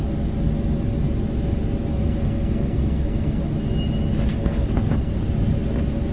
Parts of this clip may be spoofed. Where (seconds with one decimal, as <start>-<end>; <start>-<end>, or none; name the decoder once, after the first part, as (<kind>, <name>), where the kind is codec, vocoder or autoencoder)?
1.9-3.4 (codec, SNAC); 4.3-5.2